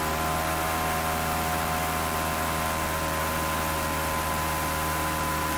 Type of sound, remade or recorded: recorded